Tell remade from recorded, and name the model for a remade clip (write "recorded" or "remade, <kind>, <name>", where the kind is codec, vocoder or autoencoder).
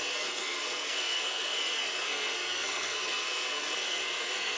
remade, codec, SNAC